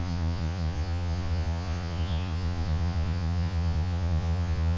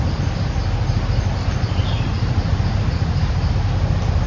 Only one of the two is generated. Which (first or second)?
first